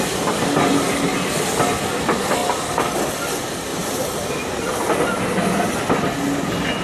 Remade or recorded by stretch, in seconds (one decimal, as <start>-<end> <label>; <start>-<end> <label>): 0.0-3.7 recorded; 3.7-4.9 remade; 4.9-6.8 recorded